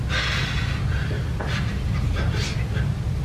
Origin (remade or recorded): recorded